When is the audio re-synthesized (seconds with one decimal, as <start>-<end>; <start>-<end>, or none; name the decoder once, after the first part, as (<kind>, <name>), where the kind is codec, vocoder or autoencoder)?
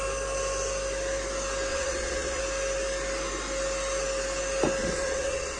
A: 1.7-2.4 (vocoder, WaveNeXt); 4.8-5.6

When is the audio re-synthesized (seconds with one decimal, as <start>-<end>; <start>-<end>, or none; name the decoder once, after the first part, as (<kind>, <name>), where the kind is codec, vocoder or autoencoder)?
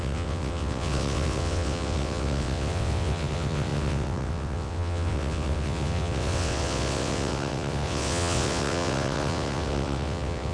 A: 0.0-10.5 (vocoder, WaveNeXt)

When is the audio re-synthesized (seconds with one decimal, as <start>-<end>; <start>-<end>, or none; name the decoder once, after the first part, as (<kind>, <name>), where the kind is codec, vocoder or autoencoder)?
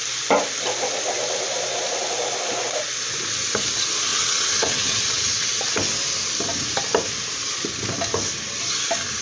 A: 4.1-5.6 (vocoder, WaveNeXt)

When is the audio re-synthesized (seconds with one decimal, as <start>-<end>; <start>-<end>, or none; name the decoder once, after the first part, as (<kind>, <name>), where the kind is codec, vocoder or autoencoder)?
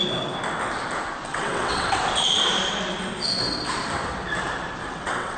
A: 1.3-2.0 (vocoder, WaveNeXt); 4.8-5.4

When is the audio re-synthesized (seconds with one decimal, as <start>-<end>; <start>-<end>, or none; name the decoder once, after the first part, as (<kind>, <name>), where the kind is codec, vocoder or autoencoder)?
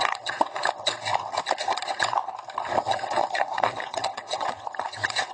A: 0.0-1.1 (vocoder, WaveNeXt); 1.7-2.2; 2.8-5.3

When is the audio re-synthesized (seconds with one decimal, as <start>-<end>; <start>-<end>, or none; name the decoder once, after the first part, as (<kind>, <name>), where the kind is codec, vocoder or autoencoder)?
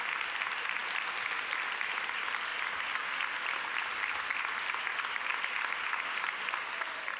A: none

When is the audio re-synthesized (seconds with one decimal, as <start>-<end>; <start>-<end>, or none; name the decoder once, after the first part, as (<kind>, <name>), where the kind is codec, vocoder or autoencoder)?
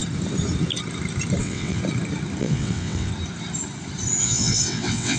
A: 1.4-1.8 (vocoder, WaveNeXt); 2.4-3.1; 4.2-5.2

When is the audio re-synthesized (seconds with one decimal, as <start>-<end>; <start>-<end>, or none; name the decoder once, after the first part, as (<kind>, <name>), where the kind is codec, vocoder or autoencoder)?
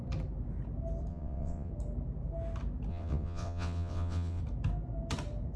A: 1.1-1.7 (vocoder, WaveNeXt); 2.9-4.4